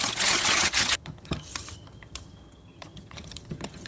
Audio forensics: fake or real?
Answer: fake